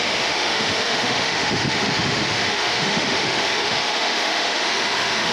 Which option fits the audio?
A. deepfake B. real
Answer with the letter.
A